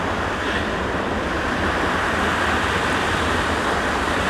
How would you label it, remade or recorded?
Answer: recorded